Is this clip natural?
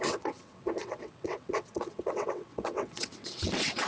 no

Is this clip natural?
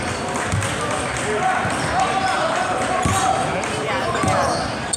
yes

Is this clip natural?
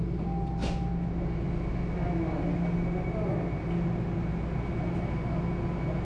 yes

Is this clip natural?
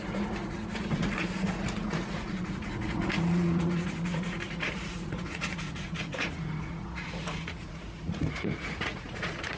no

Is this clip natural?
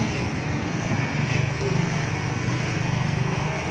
no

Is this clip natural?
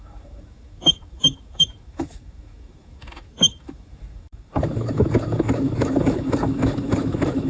no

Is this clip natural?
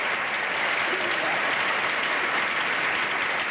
yes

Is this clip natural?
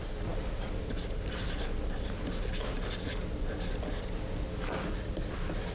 yes